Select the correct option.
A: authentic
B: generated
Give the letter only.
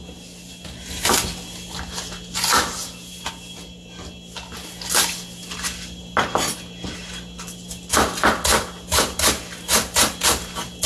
A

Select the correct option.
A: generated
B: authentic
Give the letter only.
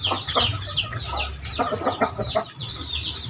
B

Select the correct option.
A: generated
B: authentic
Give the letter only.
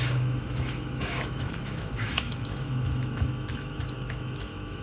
A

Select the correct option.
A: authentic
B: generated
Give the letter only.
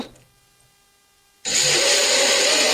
A